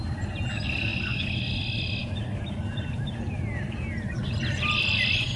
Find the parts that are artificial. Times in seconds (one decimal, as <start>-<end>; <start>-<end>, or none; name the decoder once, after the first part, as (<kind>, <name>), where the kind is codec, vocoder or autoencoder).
none